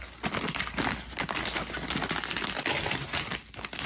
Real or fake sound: real